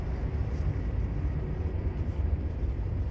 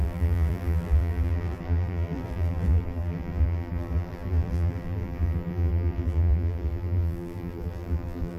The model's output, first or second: second